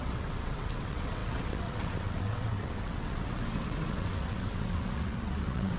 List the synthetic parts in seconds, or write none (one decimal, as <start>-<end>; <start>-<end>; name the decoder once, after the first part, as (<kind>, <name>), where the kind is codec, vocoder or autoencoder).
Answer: 0.0-5.8 (vocoder, WaveNeXt)